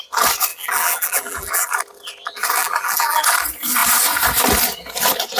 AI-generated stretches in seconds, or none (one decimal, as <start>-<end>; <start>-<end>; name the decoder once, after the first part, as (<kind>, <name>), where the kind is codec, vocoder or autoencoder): 0.5-1.7 (vocoder, BigVGAN v2); 2.6-3.2